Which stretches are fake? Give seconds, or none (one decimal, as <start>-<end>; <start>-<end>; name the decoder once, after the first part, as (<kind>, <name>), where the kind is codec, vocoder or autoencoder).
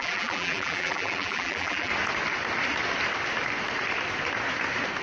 0.0-1.9 (vocoder, BigVGAN v2)